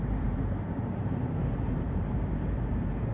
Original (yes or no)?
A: no